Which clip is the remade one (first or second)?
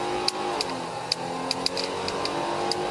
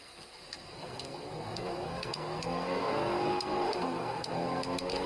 second